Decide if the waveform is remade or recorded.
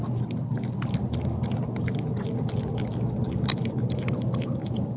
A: recorded